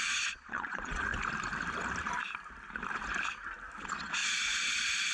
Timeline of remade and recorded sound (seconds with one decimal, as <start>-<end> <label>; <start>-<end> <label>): 0.0-1.1 remade; 1.1-3.8 recorded; 3.8-4.2 remade; 4.2-5.1 recorded